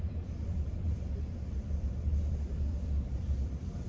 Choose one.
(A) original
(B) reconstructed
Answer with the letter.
B